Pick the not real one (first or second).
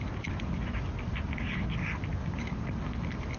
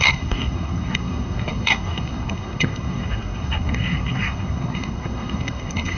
second